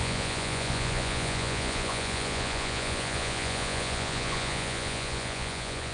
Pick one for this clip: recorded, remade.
remade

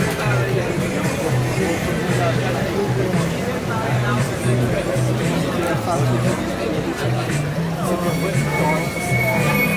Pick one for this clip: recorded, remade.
recorded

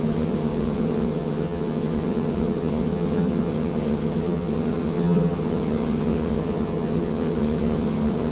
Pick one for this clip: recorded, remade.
remade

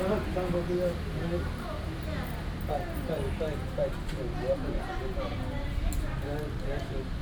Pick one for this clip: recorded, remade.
recorded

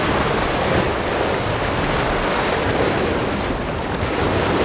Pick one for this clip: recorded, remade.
recorded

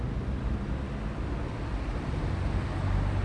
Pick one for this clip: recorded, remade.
recorded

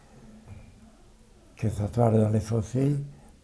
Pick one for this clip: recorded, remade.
recorded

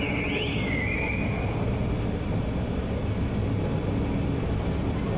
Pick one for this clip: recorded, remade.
recorded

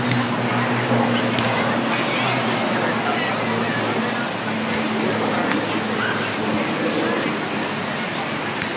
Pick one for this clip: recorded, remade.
recorded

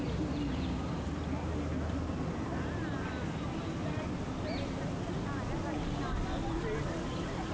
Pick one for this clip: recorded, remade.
recorded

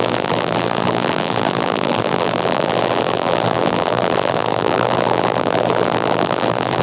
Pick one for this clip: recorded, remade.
remade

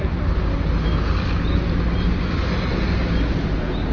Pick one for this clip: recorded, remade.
recorded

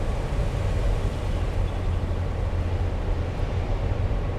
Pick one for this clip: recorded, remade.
recorded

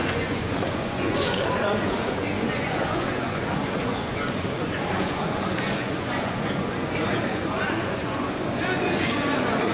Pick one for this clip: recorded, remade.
remade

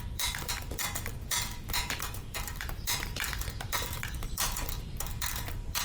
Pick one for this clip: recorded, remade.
remade